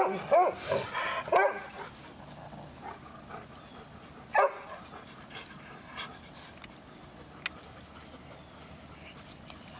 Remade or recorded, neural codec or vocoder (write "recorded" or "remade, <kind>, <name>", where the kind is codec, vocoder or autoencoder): recorded